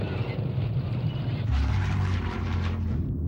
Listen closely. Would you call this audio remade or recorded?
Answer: remade